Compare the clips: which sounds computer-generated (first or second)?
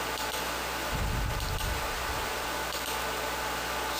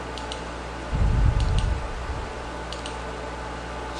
second